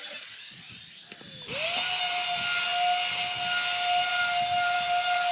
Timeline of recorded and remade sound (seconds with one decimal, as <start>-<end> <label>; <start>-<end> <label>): 0.0-5.3 recorded